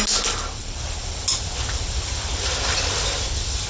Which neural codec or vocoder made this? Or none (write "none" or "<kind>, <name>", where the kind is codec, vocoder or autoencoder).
none